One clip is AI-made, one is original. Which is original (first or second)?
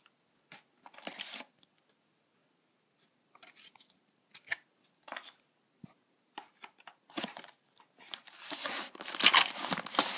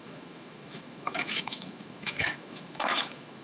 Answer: first